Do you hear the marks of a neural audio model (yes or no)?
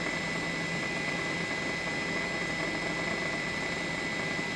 no